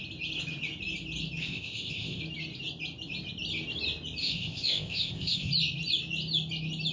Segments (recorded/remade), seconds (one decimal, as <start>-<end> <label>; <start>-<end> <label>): 0.0-1.4 recorded; 1.4-2.2 remade; 2.2-4.2 recorded; 4.2-5.5 remade; 5.5-6.9 recorded